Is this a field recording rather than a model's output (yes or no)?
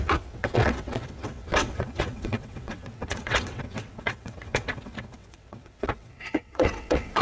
no